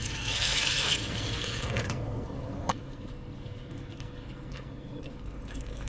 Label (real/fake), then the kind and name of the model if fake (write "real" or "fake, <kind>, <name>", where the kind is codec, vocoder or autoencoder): fake, codec, SNAC